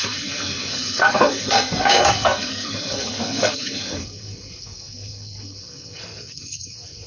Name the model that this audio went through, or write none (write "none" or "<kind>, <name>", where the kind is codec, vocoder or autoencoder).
codec, SNAC